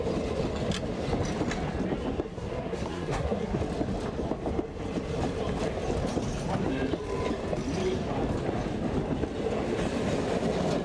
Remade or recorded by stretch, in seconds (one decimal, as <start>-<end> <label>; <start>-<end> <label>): 0.0-2.3 recorded; 2.3-3.6 remade; 3.6-10.8 recorded